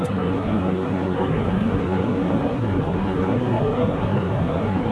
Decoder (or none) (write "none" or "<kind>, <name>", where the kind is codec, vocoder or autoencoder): codec, SNAC